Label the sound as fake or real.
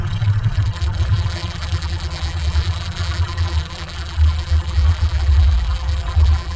fake